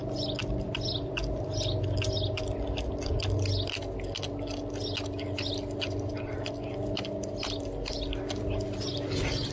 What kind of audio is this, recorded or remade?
recorded